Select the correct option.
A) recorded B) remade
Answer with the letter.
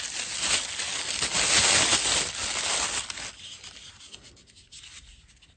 A